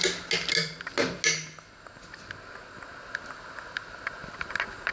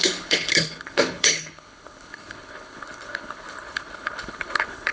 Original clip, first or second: first